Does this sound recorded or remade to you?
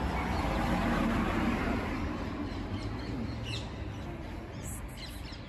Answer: recorded